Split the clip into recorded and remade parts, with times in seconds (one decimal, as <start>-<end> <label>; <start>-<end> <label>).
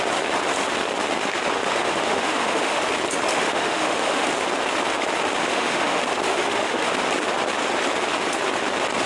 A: 0.0-1.6 recorded; 1.6-2.8 remade; 2.8-3.3 recorded; 3.3-4.3 remade; 4.3-5.4 recorded; 5.4-7.0 remade; 7.0-9.1 recorded